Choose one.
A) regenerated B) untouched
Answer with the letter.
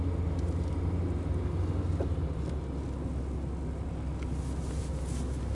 B